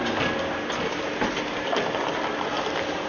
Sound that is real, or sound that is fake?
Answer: real